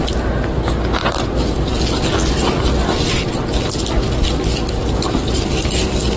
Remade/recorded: recorded